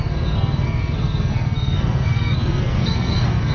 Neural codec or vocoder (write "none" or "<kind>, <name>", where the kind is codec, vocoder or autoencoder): codec, SNAC